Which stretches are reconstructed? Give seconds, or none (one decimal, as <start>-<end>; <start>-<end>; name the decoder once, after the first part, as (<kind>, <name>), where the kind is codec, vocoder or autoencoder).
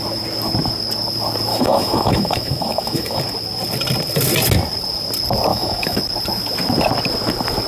1.5-3.2 (autoencoder, DAC-VAE); 5.5-6.0